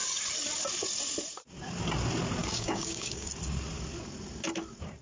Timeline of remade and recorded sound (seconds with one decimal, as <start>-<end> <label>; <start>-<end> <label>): 0.0-2.4 recorded; 2.4-3.3 remade; 3.3-5.0 recorded